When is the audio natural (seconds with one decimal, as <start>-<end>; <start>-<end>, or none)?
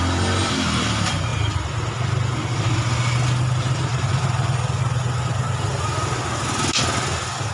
0.0-7.5